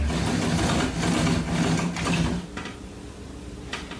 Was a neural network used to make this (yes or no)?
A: no